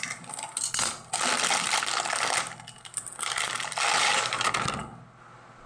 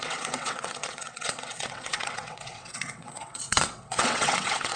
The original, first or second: first